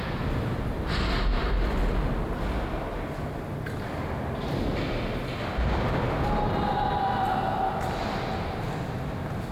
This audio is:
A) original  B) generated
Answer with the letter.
A